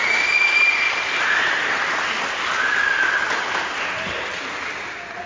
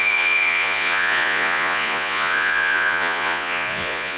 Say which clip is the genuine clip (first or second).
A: first